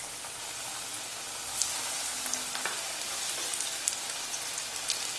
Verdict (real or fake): real